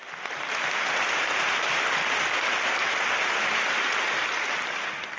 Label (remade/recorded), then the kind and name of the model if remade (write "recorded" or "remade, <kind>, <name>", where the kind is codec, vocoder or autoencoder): recorded